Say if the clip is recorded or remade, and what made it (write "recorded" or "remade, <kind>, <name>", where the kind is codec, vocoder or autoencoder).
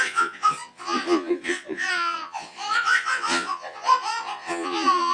remade, vocoder, Vocos